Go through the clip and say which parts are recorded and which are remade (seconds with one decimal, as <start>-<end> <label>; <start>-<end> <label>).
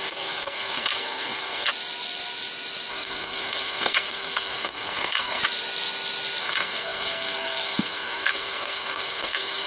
0.0-1.7 remade; 1.7-2.9 recorded; 2.9-5.4 remade; 5.4-6.4 recorded; 6.4-9.7 remade